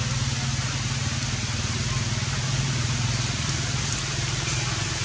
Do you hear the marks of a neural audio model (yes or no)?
no